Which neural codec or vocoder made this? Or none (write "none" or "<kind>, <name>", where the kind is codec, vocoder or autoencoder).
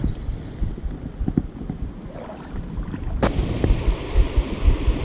none